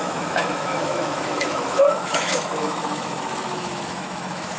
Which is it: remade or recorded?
remade